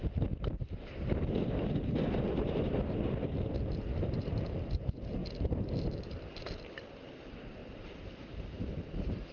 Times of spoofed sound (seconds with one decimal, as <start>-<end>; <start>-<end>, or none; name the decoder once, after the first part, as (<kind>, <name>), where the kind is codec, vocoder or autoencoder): 4.2-5.2 (vocoder, BigVGAN v2); 5.8-9.3